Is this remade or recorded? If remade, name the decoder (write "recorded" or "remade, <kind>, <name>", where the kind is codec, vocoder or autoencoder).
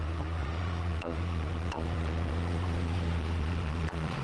remade, vocoder, Vocos